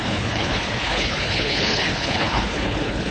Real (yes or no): no